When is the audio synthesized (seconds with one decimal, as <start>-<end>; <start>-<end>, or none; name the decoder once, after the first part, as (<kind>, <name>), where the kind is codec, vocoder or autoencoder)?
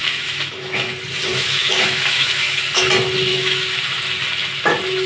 0.0-0.9 (autoencoder, DAC-VAE); 1.3-2.6; 3.3-3.8